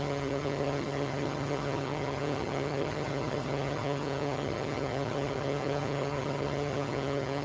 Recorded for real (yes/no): no